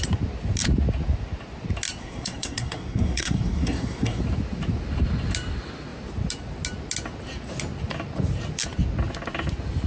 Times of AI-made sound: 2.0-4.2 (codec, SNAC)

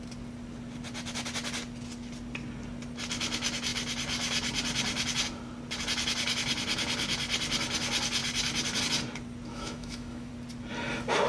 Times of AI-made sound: 9.5-10.3 (autoencoder, DAC-VAE)

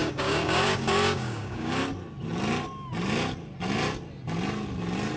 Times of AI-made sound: 0.0-1.7 (codec, DAC)

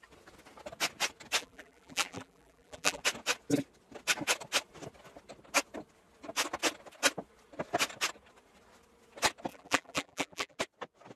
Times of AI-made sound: 1.4-3.0 (vocoder, BigVGAN v2); 9.5-10.6

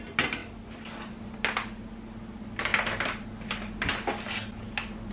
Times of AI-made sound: none

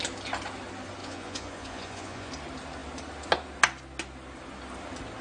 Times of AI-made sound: 1.0-2.3 (vocoder, Vocos)

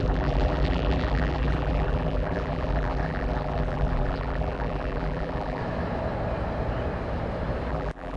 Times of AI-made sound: 0.0-5.6 (vocoder, BigVGAN v2); 7.7-8.2